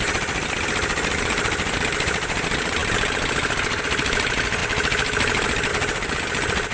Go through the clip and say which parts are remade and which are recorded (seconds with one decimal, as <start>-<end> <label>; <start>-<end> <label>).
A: 0.0-6.7 recorded

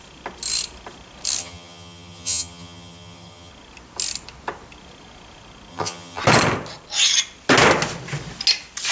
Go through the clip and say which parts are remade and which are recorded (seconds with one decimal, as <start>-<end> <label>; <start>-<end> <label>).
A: 0.0-1.4 recorded; 1.4-3.5 remade; 3.5-5.7 recorded; 5.7-6.2 remade; 6.2-8.9 recorded

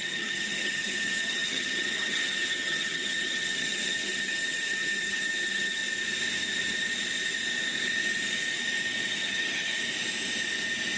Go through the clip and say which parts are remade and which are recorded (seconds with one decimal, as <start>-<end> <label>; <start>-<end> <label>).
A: 0.0-5.8 remade; 5.8-9.1 recorded; 9.1-9.7 remade; 9.7-11.0 recorded

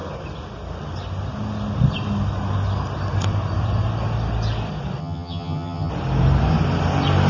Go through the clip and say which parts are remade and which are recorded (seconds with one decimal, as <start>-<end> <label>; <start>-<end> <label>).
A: 0.0-5.0 recorded; 5.0-5.9 remade; 5.9-7.3 recorded

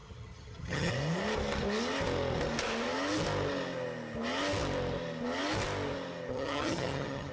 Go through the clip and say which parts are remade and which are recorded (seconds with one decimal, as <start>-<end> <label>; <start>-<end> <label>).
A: 0.0-0.9 remade; 0.9-6.3 recorded; 6.3-7.3 remade

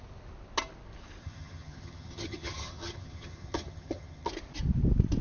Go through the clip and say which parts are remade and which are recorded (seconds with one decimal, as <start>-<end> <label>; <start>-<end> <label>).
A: 0.0-1.2 recorded; 1.2-4.3 remade; 4.3-5.2 recorded

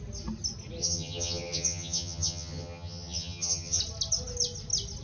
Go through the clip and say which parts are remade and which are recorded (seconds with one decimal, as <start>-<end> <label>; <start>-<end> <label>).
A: 0.0-0.8 recorded; 0.8-3.8 remade; 3.8-5.0 recorded

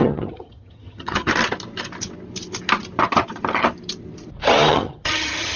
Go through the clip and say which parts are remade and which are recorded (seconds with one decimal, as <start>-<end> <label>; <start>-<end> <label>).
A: 0.0-1.3 remade; 1.3-4.7 recorded; 4.7-5.6 remade